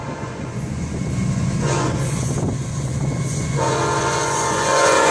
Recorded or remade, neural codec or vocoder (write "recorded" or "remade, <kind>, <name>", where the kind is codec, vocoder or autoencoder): remade, vocoder, Vocos